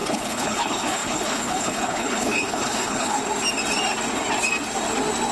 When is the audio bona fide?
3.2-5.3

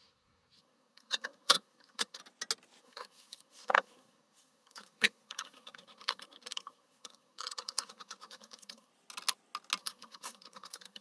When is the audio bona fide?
2.2-2.8; 8.9-9.8

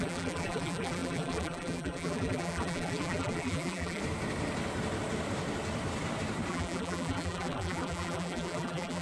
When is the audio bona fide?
4.0-6.5

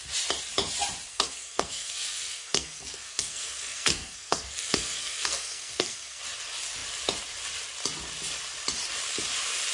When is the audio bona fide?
0.0-1.1; 6.2-9.7

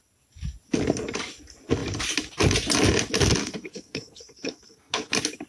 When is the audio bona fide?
0.0-3.4; 5.1-5.5